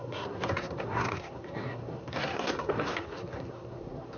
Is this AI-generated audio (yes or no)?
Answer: yes